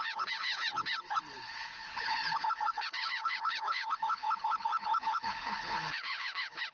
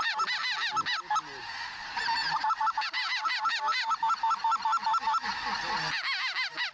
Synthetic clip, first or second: first